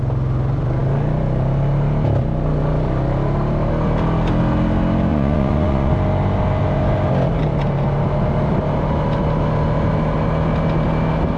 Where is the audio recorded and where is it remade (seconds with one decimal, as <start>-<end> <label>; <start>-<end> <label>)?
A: 0.0-5.1 recorded; 5.1-5.9 remade; 5.9-11.4 recorded